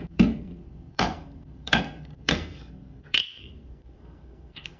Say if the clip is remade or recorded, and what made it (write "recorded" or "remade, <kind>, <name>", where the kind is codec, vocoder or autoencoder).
remade, codec, SNAC